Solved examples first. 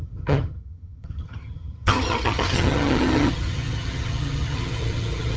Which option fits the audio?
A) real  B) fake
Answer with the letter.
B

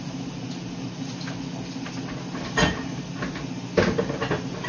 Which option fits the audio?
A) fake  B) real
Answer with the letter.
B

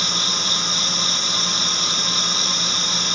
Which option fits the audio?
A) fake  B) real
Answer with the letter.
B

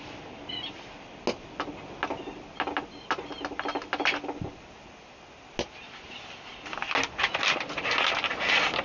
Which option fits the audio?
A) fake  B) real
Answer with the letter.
B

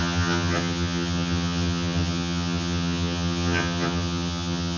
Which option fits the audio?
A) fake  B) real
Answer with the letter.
A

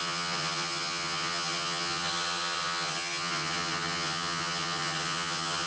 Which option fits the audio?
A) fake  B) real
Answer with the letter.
A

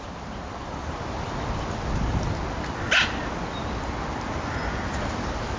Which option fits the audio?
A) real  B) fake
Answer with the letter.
A